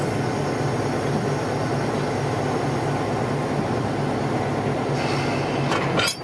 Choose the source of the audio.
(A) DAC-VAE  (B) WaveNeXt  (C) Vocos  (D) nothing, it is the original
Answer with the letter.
D